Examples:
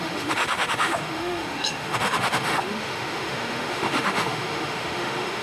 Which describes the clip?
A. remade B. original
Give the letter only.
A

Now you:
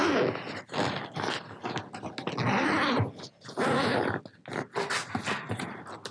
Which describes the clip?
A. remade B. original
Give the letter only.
B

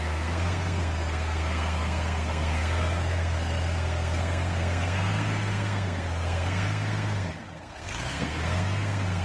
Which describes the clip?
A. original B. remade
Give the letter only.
B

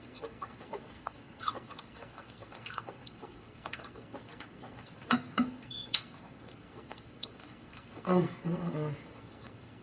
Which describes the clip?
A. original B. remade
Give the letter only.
B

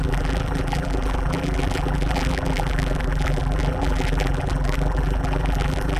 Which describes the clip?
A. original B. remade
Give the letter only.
B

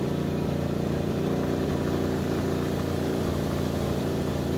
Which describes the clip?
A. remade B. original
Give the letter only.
A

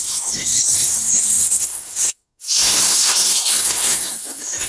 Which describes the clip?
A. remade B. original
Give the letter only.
A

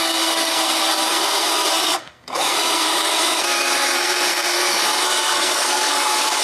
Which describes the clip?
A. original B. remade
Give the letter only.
B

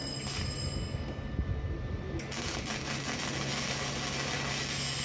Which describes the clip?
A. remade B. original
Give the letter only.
B